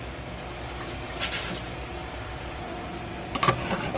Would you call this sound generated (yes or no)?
no